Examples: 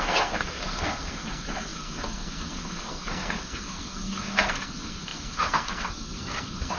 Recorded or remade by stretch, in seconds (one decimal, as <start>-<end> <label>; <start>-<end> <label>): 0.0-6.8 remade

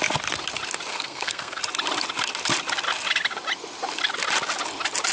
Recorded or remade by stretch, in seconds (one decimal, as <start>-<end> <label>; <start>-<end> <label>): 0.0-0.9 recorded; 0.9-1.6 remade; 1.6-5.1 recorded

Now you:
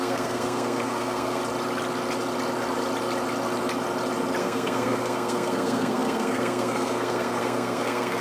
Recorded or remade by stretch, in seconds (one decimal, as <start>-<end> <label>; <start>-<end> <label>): 0.0-1.4 remade; 1.4-4.4 recorded; 4.4-8.2 remade

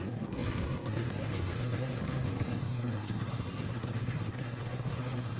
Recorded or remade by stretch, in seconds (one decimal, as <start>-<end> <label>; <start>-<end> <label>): 0.0-5.4 remade